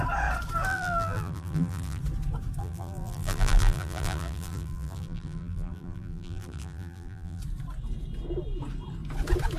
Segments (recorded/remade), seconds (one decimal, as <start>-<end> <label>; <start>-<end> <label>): 0.0-0.7 recorded; 0.7-2.0 remade; 2.0-2.6 recorded; 2.6-7.4 remade; 7.4-9.6 recorded